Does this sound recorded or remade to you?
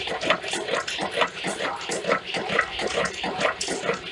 recorded